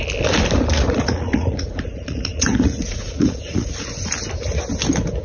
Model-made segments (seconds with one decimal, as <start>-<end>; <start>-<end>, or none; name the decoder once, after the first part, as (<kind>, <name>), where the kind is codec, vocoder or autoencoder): 0.7-3.8 (vocoder, Vocos)